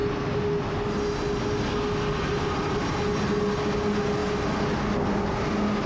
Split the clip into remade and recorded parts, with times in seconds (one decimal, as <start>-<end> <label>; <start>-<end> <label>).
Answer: 0.0-5.9 recorded